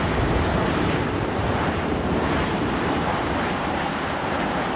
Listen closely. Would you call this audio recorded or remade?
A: remade